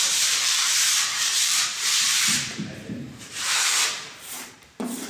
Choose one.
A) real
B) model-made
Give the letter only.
B